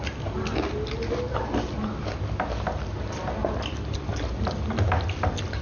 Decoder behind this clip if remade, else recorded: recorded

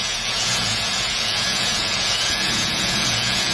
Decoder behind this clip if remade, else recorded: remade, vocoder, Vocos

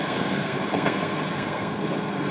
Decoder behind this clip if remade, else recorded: remade, codec, SNAC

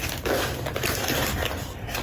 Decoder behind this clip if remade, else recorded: recorded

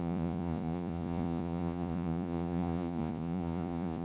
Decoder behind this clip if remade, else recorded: remade, vocoder, Vocos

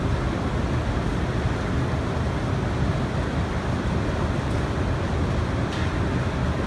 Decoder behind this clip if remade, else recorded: recorded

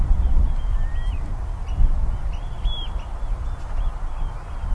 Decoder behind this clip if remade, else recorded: recorded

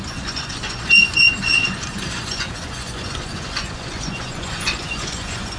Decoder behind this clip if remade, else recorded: remade, vocoder, Vocos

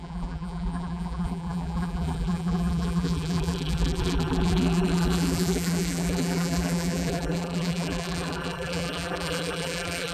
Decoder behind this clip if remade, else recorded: remade, vocoder, BigVGAN v2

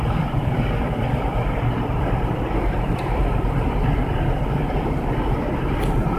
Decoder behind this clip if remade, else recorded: remade, vocoder, BigVGAN v2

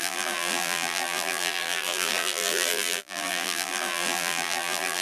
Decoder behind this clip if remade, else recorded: remade, vocoder, BigVGAN v2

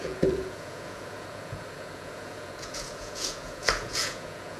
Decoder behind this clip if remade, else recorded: remade, vocoder, Vocos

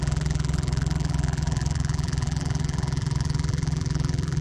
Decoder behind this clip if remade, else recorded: remade, vocoder, BigVGAN v2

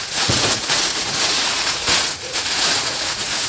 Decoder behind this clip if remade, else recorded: remade, vocoder, Vocos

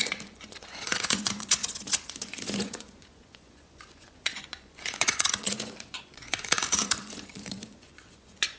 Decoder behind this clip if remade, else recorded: remade, vocoder, Vocos